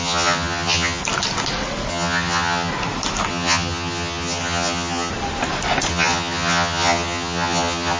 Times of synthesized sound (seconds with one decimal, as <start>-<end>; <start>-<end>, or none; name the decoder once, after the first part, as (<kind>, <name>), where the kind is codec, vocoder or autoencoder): 0.0-1.0 (vocoder, HiFi-GAN); 1.9-2.7; 3.3-5.1; 5.9-8.0